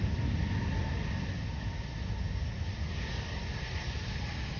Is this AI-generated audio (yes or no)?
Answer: no